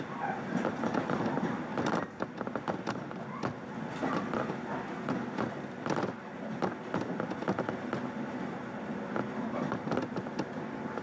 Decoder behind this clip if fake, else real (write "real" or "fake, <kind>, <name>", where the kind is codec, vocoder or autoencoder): real